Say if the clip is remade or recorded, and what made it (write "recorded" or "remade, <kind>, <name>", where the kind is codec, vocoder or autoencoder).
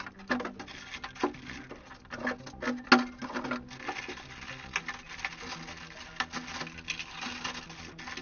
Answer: recorded